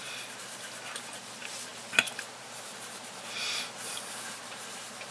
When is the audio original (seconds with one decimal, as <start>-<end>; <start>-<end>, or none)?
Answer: none